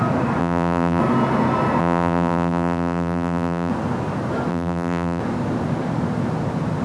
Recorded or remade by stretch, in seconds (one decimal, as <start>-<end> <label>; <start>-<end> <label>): 0.0-0.4 recorded; 0.4-1.0 remade; 1.0-1.8 recorded; 1.8-3.7 remade; 3.7-4.5 recorded; 4.5-5.2 remade; 5.2-6.8 recorded